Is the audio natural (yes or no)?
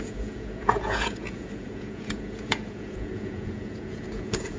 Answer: no